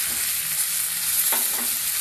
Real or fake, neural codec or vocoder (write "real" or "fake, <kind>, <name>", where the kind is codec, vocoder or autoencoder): real